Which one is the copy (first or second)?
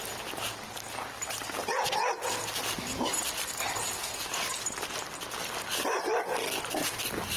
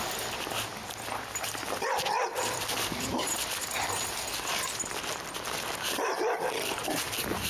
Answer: second